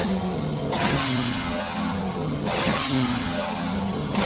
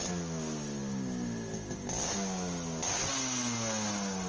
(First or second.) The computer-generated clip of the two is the first